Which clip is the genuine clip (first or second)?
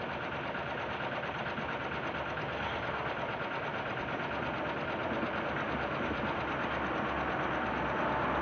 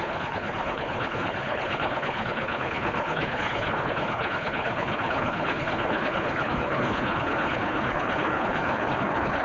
first